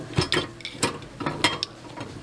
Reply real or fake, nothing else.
real